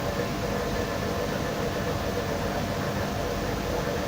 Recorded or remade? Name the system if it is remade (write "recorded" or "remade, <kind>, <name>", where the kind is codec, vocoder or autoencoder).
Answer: recorded